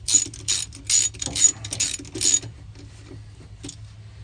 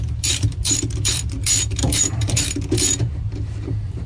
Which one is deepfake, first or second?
second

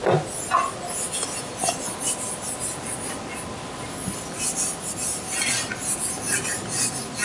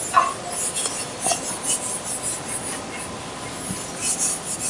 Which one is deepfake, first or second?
second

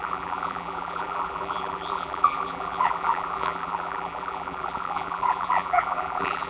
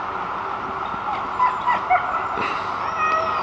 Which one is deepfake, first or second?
first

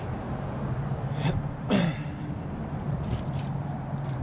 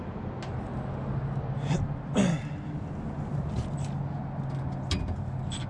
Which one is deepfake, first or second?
first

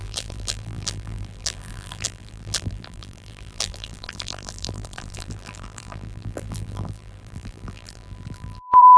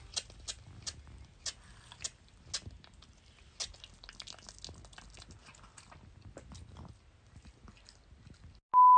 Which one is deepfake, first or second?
first